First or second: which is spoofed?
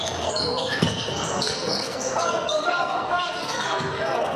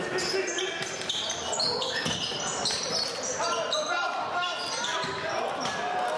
first